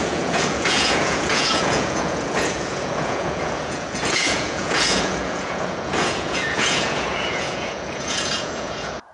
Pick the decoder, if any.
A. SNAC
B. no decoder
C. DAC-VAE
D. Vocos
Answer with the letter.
D